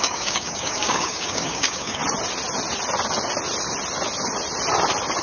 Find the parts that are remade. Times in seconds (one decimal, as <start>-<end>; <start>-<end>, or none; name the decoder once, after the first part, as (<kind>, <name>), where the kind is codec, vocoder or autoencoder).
0.0-2.0 (codec, DAC)